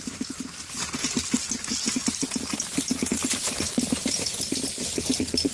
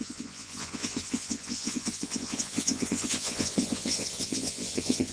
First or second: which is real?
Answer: first